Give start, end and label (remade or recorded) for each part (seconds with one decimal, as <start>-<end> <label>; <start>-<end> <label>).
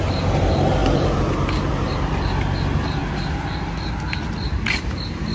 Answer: 0.0-5.3 recorded